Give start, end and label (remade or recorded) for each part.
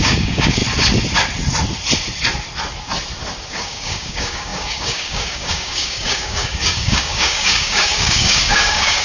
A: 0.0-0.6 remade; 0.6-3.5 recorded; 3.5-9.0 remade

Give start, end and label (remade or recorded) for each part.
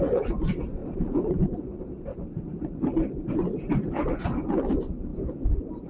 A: 0.0-0.8 recorded; 0.8-1.4 remade; 1.4-2.1 recorded; 2.1-2.7 remade; 2.7-5.1 recorded; 5.1-5.9 remade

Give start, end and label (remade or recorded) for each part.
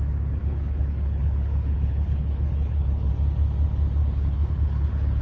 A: 0.0-0.4 recorded; 0.4-3.1 remade; 3.1-4.0 recorded; 4.0-5.2 remade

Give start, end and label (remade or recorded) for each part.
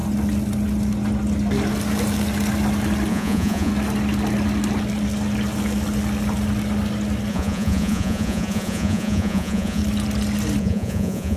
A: 0.0-3.1 recorded; 3.1-3.7 remade; 3.7-7.3 recorded; 7.3-9.8 remade; 9.8-10.6 recorded; 10.6-11.4 remade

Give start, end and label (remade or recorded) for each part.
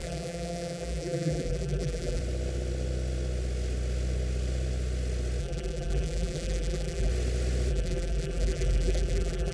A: 0.0-2.2 remade; 2.2-5.4 recorded; 5.4-7.1 remade; 7.1-7.7 recorded; 7.7-9.5 remade